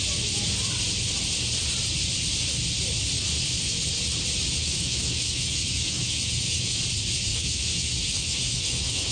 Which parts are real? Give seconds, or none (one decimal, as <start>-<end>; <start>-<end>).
0.0-4.6; 6.8-7.3